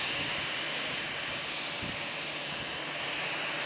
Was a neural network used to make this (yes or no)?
no